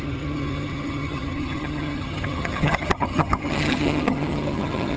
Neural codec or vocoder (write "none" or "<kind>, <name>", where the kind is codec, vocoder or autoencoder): vocoder, HiFi-GAN